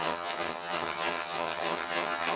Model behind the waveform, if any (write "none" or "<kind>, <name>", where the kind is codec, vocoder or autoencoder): vocoder, HiFi-GAN